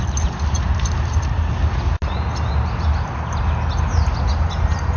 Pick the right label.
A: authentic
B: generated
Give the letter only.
A